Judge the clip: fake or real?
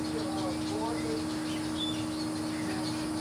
real